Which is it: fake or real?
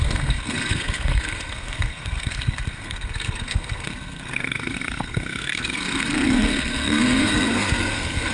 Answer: fake